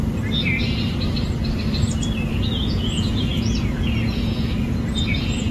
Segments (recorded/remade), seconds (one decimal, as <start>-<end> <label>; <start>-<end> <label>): 0.0-2.3 recorded; 2.3-5.5 remade